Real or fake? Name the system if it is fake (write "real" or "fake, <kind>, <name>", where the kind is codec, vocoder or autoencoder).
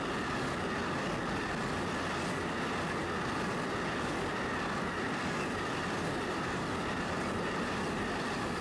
real